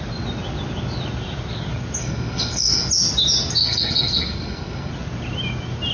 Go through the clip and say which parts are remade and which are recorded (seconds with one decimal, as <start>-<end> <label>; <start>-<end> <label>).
0.0-2.0 recorded; 2.0-2.9 remade; 2.9-3.6 recorded; 3.6-4.9 remade; 4.9-5.9 recorded